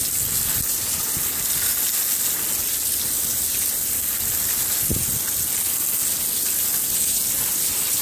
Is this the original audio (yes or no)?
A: yes